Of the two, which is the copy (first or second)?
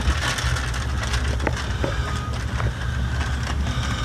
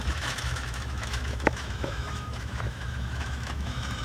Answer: second